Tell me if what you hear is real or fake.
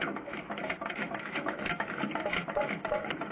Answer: fake